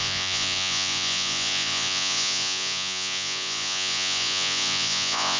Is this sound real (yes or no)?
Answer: no